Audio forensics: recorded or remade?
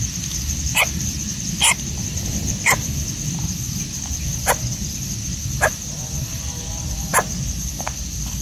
recorded